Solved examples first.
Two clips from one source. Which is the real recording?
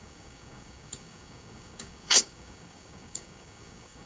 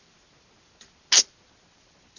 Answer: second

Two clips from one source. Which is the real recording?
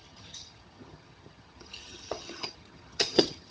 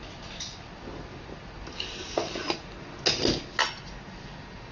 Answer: second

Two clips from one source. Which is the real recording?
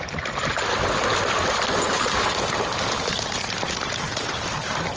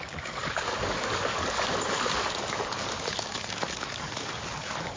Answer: first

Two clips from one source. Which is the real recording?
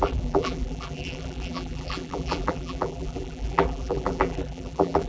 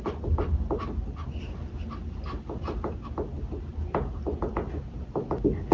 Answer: second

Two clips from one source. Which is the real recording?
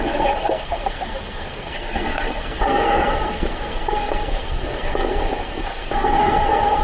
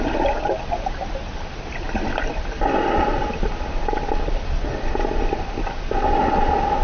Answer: second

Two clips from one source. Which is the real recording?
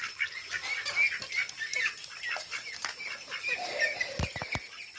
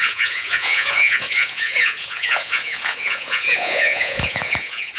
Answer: first